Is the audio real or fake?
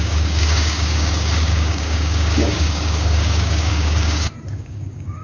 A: fake